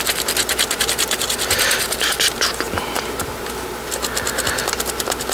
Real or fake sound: real